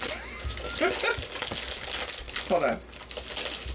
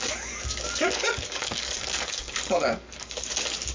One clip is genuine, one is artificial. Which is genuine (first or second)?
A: first